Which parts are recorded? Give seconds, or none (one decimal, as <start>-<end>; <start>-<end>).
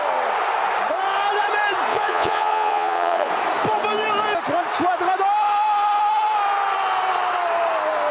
0.0-1.9; 3.3-8.1